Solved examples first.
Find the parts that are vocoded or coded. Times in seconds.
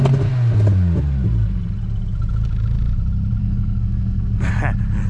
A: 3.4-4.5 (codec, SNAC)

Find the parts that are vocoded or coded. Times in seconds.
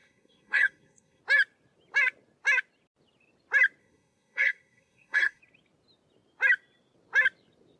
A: 0.0-1.2 (codec, SNAC); 3.8-5.4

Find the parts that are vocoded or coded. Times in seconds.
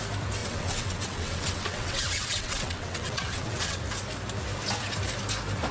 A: 0.4-3.8 (vocoder, WaveNeXt)